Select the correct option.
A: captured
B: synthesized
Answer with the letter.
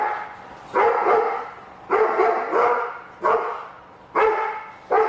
A